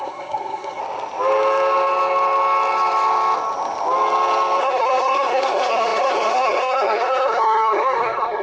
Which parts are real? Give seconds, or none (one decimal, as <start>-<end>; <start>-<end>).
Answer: 0.8-4.6